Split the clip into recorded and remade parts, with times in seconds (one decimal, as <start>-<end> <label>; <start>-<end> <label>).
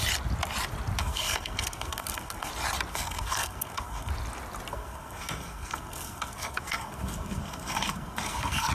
0.0-1.0 recorded; 1.0-2.5 remade; 2.5-2.9 recorded; 2.9-4.1 remade; 4.1-4.7 recorded; 4.7-8.7 remade